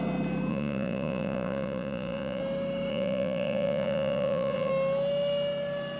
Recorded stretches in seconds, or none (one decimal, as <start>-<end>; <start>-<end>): 0.0-0.5; 2.4-2.9; 4.7-6.0